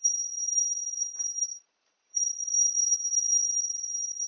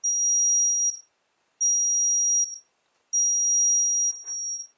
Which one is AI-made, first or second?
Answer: first